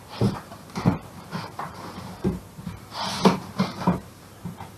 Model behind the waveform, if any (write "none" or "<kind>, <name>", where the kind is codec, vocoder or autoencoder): vocoder, BigVGAN v2